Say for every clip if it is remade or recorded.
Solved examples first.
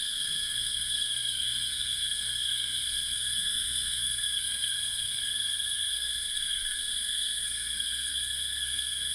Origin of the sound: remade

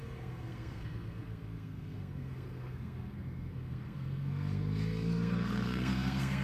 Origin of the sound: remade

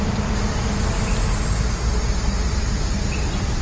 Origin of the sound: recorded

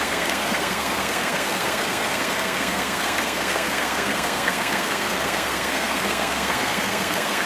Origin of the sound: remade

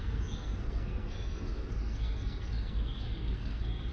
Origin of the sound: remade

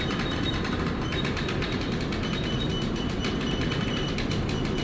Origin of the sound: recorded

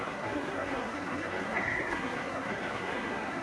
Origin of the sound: remade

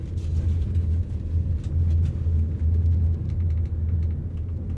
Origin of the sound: recorded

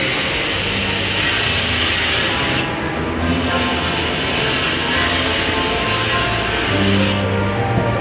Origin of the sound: recorded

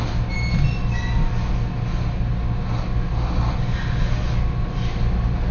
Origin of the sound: recorded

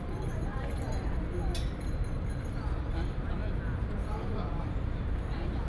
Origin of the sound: recorded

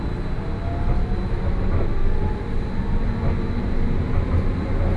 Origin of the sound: recorded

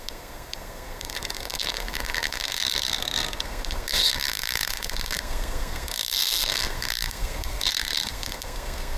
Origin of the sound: remade